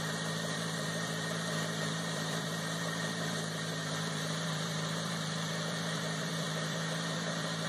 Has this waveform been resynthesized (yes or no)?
yes